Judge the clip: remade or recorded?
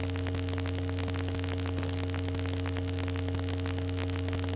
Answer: recorded